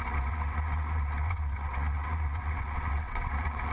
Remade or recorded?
remade